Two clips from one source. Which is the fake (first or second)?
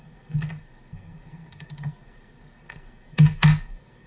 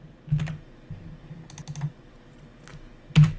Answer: first